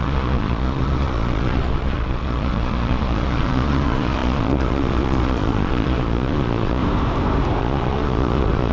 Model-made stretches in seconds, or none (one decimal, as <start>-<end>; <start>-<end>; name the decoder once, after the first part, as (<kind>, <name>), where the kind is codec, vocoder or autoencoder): 0.0-6.8 (vocoder, Vocos); 7.6-8.7